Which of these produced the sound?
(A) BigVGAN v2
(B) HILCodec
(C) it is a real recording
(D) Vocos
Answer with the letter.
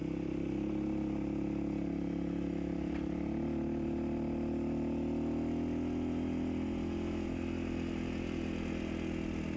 C